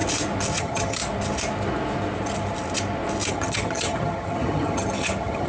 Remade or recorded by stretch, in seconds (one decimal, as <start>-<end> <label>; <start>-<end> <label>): 0.0-0.6 recorded; 0.6-1.0 remade; 1.0-3.3 recorded; 3.3-5.5 remade